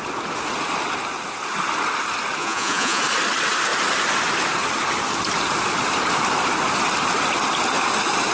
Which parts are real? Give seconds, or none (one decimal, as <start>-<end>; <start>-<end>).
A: 0.0-2.4; 3.0-8.3